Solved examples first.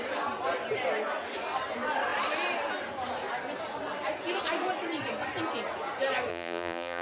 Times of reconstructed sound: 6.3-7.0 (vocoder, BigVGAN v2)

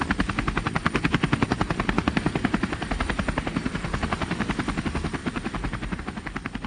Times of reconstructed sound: 0.8-4.8 (vocoder, BigVGAN v2); 5.2-6.0

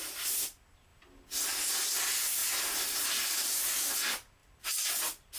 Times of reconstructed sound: none